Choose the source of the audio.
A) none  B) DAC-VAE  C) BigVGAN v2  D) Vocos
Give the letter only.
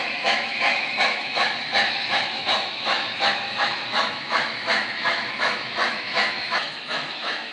B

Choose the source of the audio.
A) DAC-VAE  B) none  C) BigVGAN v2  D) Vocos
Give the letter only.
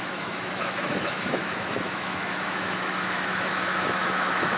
A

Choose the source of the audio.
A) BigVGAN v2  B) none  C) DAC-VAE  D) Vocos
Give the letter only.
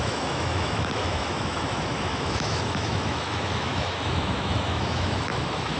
C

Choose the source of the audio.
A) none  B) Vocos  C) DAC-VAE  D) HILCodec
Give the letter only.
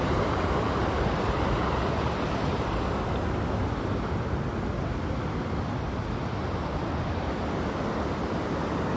A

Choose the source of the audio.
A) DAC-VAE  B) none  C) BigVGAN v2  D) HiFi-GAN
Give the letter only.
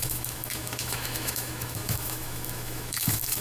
A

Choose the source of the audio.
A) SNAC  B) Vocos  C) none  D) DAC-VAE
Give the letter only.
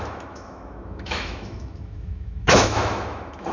D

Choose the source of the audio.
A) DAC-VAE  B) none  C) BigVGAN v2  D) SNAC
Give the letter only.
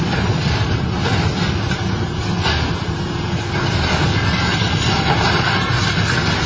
B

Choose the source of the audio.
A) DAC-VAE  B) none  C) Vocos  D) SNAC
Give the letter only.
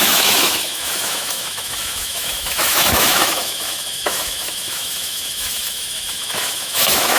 A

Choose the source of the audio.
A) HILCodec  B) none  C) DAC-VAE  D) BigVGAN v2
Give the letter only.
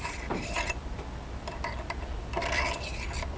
B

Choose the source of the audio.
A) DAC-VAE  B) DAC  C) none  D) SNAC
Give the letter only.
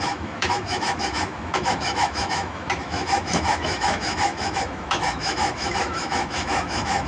A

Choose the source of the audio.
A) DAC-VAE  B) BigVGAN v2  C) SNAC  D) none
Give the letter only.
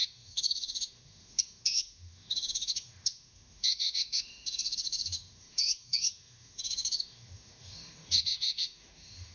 A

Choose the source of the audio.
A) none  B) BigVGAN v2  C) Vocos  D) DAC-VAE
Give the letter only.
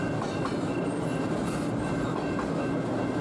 A